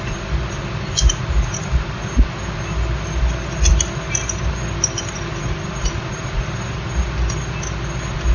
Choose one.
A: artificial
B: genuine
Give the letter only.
B